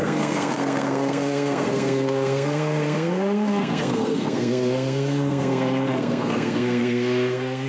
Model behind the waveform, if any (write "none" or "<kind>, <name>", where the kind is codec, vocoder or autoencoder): codec, SNAC